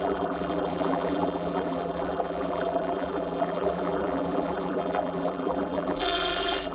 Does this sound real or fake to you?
fake